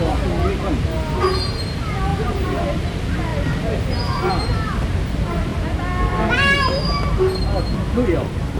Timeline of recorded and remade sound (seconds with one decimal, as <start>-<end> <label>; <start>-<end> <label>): 0.0-2.1 recorded; 2.1-2.6 remade; 2.6-8.6 recorded